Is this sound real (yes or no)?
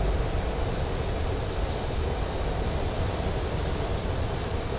yes